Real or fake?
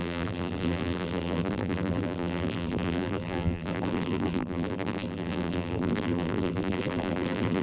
fake